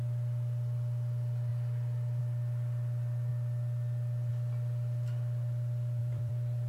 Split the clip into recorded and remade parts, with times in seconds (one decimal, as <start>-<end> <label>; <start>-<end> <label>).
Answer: 0.0-6.0 recorded; 6.0-6.7 remade